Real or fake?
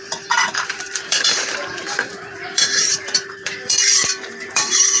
fake